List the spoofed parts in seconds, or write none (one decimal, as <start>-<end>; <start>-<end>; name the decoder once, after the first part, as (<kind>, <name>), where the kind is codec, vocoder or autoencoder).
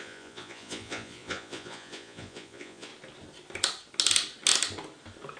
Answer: 0.0-2.9 (vocoder, Vocos)